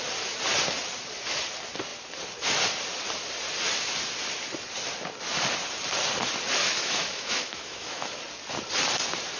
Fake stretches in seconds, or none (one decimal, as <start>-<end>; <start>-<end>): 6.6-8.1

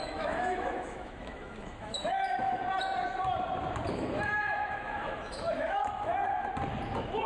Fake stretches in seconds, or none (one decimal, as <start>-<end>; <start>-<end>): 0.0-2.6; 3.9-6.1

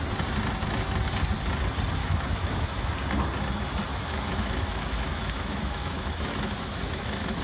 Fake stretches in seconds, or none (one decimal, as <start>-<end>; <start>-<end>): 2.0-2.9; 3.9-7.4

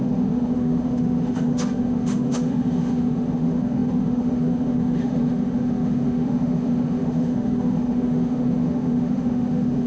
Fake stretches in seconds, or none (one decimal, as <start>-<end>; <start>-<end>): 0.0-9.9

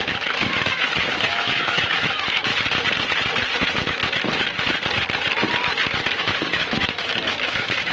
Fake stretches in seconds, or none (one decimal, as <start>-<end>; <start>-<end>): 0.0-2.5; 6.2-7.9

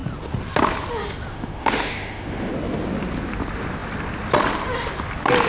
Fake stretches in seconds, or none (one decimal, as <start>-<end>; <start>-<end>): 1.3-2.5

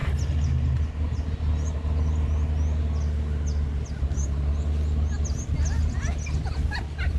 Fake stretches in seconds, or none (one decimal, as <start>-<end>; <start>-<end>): none

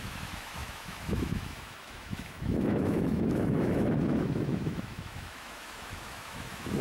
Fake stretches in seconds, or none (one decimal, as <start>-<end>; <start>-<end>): 0.0-6.8